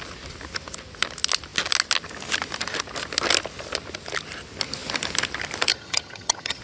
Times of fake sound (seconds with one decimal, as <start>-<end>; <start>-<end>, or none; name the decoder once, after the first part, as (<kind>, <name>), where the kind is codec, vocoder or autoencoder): 5.7-6.6 (vocoder, HiFi-GAN)